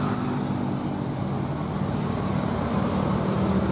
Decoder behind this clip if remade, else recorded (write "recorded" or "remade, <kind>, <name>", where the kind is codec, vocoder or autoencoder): recorded